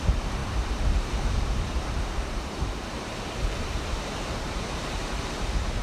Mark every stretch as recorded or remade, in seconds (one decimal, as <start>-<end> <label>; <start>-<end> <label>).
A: 0.0-5.0 remade; 5.0-5.8 recorded